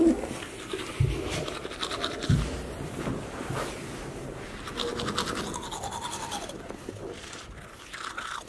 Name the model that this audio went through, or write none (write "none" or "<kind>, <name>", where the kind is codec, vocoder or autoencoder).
none